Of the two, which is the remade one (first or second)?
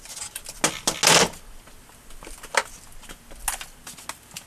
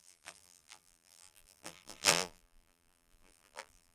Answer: second